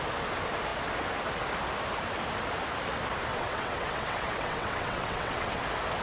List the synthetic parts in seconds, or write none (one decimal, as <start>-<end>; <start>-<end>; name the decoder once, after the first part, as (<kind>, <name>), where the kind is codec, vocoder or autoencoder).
3.3-5.6 (vocoder, WaveNeXt)